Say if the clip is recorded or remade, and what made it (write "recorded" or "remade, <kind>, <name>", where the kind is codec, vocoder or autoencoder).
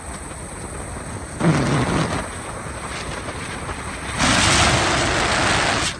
recorded